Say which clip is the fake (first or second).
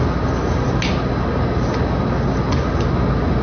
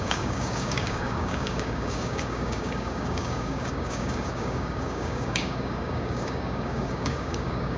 second